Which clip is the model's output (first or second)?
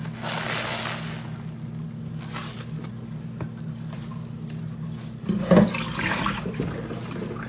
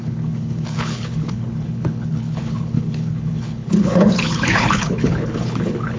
second